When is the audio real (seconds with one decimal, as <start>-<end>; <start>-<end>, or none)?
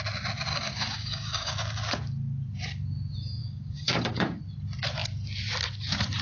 0.0-0.5; 1.5-3.4; 4.4-6.2